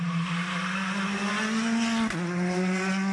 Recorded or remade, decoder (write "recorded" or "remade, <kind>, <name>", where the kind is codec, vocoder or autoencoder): recorded